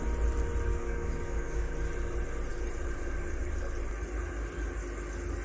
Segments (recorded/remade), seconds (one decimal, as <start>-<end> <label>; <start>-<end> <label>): 0.0-0.7 recorded; 0.7-1.7 remade; 1.7-5.4 recorded